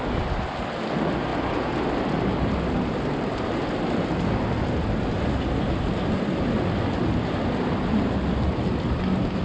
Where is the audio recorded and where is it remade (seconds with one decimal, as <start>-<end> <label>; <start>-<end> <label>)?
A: 0.0-9.4 recorded